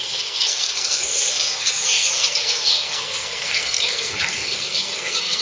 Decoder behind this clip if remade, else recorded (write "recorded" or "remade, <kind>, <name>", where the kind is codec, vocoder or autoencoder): remade, codec, SNAC